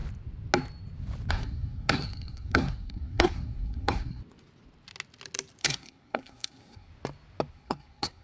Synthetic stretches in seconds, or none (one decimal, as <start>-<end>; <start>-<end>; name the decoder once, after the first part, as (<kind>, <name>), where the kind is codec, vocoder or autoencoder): 1.3-4.2 (codec, SNAC); 5.6-6.9; 7.5-8.2